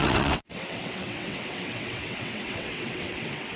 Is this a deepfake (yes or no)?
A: yes